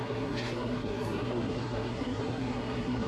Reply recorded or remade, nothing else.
remade